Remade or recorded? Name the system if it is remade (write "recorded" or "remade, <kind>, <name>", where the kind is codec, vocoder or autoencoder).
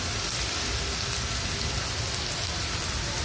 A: recorded